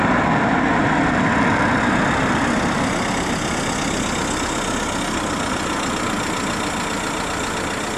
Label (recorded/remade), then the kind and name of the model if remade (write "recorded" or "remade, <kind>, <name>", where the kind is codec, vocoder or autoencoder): recorded